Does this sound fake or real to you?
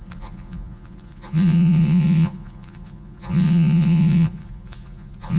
fake